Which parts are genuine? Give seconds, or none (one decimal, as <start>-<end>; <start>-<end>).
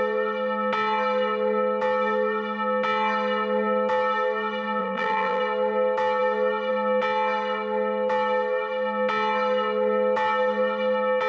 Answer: 0.0-4.8; 5.4-11.3